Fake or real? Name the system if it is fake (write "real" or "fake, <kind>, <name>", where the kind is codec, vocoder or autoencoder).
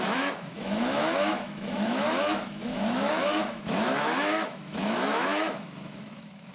fake, autoencoder, DAC-VAE